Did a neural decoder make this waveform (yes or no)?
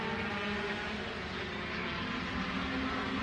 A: no